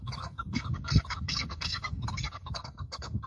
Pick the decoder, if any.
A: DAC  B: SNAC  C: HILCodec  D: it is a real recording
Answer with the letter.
B